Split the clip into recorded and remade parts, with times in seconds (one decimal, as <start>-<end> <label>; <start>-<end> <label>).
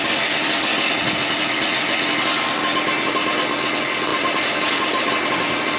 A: 0.0-4.1 recorded; 4.1-5.1 remade; 5.1-5.8 recorded